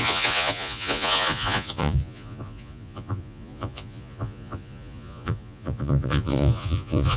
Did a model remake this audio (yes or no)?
yes